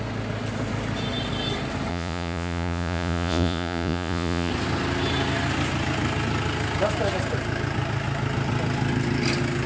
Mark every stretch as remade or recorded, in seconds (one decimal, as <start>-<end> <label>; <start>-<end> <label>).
0.0-1.9 recorded; 1.9-4.5 remade; 4.5-9.7 recorded